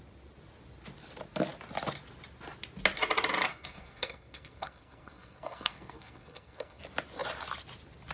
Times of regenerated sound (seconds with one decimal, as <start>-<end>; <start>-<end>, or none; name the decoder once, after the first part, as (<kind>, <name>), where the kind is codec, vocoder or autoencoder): 3.5-6.8 (codec, SNAC)